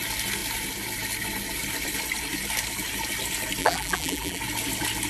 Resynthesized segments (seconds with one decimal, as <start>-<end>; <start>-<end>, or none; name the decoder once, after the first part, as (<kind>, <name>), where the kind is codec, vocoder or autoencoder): 3.6-4.4 (vocoder, BigVGAN v2)